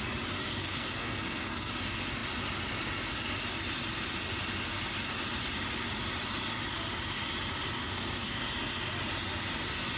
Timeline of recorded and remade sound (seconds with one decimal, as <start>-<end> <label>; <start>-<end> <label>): 0.0-0.5 recorded; 0.5-1.7 remade; 1.7-7.8 recorded; 7.8-8.4 remade; 8.4-10.0 recorded